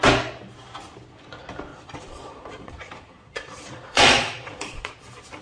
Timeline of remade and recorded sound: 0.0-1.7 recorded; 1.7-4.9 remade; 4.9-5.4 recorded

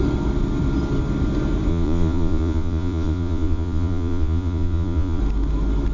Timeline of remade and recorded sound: 0.0-1.7 recorded; 1.7-5.2 remade; 5.2-5.9 recorded

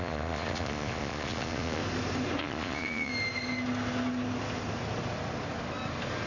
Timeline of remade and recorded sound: 0.0-1.8 remade; 1.8-2.4 recorded; 2.4-3.1 remade; 3.1-6.3 recorded

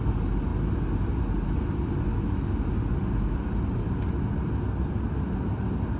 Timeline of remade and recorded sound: 0.0-6.0 recorded

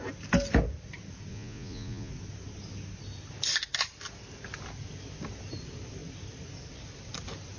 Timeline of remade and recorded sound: 0.0-1.3 recorded; 1.3-2.1 remade; 2.1-7.6 recorded

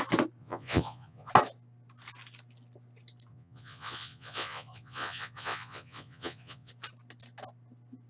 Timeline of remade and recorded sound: 0.0-0.4 recorded; 0.4-1.3 remade; 1.3-3.3 recorded; 3.3-6.7 remade; 6.7-8.1 recorded